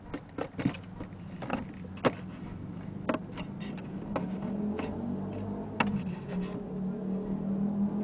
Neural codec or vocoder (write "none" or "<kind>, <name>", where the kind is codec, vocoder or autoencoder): none